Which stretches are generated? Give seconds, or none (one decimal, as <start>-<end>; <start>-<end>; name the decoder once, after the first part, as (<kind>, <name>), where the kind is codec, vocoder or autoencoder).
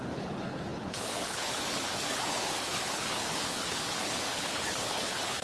0.0-5.4 (codec, HILCodec)